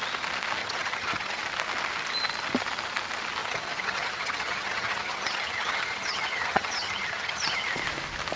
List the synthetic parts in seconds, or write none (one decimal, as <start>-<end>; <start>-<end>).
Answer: 0.6-1.4; 3.4-7.6